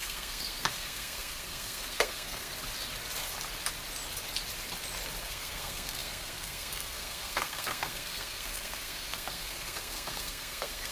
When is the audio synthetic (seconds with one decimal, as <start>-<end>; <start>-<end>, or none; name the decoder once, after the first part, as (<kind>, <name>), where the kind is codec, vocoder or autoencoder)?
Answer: 0.0-2.5 (codec, SNAC); 5.2-10.9